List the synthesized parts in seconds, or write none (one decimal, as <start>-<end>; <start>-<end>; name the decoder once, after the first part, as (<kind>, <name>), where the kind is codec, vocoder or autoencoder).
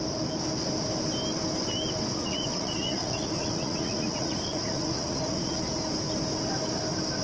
2.1-5.6 (vocoder, Vocos)